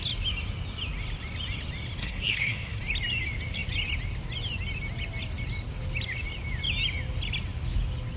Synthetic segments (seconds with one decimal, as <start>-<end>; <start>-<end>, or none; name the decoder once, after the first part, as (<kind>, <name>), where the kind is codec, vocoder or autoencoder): 2.0-2.8 (codec, SNAC)